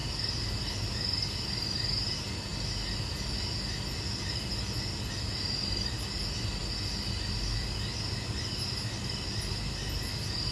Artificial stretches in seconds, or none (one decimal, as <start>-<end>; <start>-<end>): none

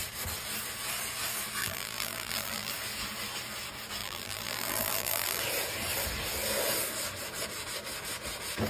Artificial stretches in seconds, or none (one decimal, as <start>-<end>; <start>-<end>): 1.6-2.7; 4.0-5.4

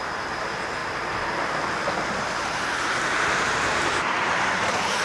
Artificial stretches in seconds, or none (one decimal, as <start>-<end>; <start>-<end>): 0.0-0.8; 2.2-5.0

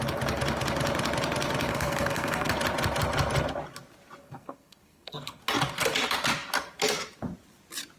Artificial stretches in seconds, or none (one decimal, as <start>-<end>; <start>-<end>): 1.7-2.5; 4.2-5.4

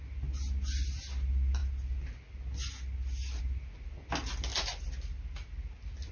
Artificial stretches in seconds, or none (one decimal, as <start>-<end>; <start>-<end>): none